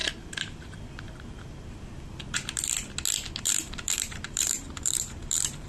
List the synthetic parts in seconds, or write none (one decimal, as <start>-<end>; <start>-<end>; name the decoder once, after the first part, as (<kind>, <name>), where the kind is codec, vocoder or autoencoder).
3.4-5.7 (vocoder, BigVGAN v2)